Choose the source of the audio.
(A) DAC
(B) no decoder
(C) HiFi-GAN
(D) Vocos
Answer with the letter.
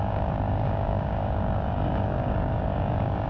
A